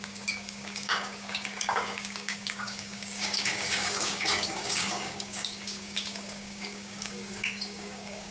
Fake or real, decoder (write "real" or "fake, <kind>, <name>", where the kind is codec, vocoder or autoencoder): fake, codec, DAC